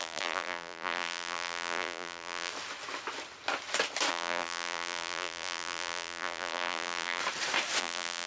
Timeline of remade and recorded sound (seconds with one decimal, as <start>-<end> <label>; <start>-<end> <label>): 0.0-2.5 remade; 2.5-4.1 recorded; 4.1-7.2 remade; 7.2-7.8 recorded; 7.8-8.3 remade